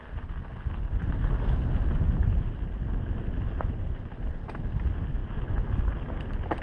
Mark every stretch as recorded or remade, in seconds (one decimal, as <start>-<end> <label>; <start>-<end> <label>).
0.0-6.6 recorded